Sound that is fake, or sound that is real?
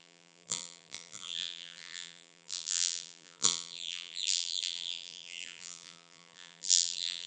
fake